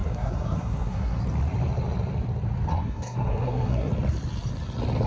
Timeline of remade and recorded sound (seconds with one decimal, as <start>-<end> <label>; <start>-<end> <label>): 0.0-1.2 remade; 1.2-2.7 recorded; 2.7-3.9 remade; 3.9-5.1 recorded